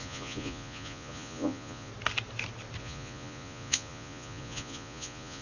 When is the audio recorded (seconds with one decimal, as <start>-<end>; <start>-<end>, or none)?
1.9-2.8